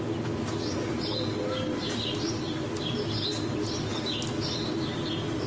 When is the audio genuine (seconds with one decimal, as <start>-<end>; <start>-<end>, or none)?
0.0-5.5